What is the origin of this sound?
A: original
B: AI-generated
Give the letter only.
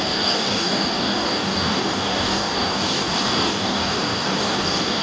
B